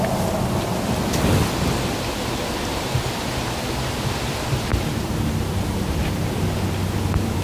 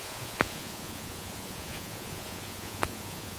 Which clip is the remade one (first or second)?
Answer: second